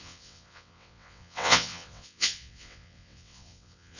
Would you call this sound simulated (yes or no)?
yes